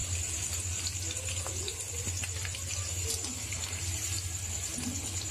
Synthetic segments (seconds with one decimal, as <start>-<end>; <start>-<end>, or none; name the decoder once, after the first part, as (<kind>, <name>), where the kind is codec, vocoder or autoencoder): none